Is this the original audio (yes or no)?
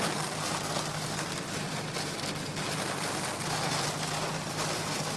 yes